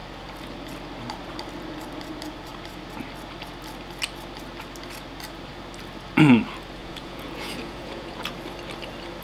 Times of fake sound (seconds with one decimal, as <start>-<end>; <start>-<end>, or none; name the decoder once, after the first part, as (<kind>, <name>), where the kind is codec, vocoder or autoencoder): 6.8-8.3 (vocoder, Vocos)